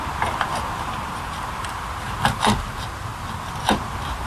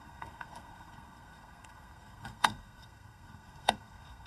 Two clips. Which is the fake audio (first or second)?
second